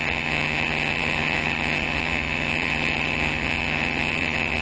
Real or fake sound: fake